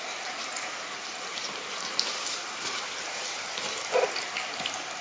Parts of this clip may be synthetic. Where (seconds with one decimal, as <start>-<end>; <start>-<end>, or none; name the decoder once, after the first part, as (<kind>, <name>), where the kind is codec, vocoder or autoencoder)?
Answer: 1.3-3.6 (vocoder, BigVGAN v2)